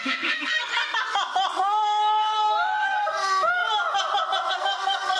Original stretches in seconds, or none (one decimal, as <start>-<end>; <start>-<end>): 0.7-1.5; 3.6-4.5